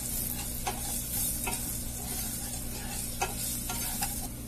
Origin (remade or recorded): recorded